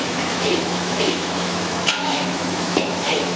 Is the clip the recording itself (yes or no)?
no